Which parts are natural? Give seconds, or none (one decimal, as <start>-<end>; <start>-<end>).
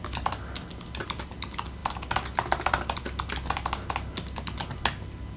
0.0-5.4